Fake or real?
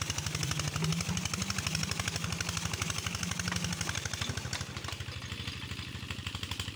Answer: real